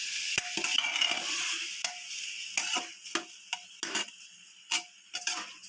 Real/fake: real